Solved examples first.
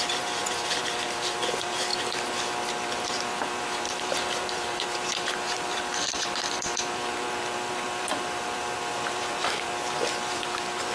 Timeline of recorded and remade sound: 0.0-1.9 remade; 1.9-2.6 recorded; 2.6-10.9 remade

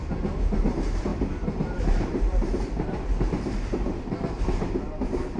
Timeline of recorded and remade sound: 0.0-0.7 recorded; 0.7-5.4 remade

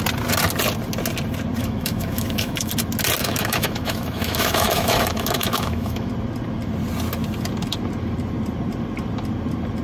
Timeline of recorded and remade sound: 0.0-1.6 recorded; 1.6-2.7 remade; 2.7-3.2 recorded; 3.2-6.1 remade; 6.1-9.8 recorded

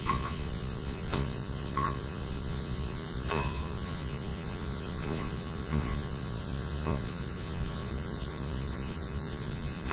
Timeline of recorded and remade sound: 0.0-9.9 remade

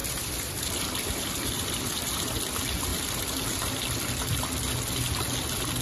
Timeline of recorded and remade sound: 0.0-2.1 remade; 2.1-2.9 recorded; 2.9-3.4 remade; 3.4-5.8 recorded

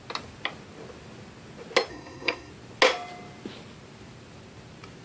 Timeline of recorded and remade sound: 0.0-1.9 recorded; 1.9-2.5 remade; 2.5-5.0 recorded